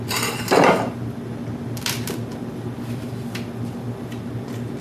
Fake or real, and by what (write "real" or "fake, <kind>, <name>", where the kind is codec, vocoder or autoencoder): real